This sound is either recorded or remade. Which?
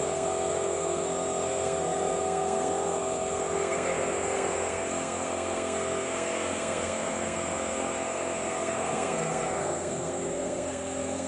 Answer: remade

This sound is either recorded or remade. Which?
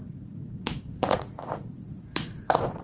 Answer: remade